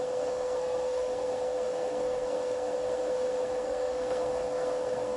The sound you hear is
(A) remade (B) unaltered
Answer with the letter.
A